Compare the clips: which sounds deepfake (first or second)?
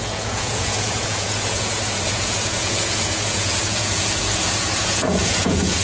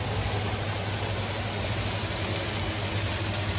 first